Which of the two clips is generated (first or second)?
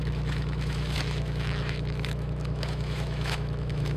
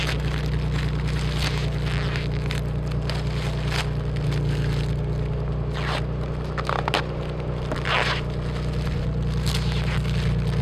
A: first